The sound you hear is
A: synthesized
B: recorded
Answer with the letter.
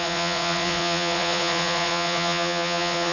A